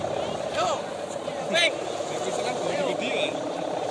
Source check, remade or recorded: recorded